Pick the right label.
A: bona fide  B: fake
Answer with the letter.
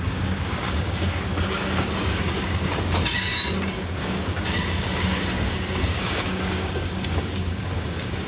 B